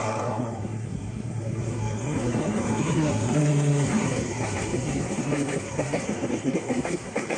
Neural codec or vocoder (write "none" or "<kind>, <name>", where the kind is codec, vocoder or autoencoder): codec, SNAC